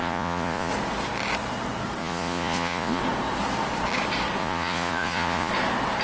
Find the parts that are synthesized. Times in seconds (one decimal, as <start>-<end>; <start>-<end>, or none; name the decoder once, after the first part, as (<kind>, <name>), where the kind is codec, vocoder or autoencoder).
0.0-0.7 (vocoder, Vocos); 2.0-3.0; 4.4-5.5